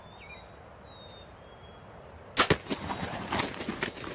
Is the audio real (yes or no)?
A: yes